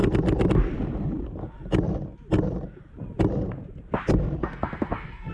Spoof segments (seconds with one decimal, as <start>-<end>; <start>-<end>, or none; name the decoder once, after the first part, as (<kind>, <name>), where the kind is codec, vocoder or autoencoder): 4.4-5.3 (codec, SNAC)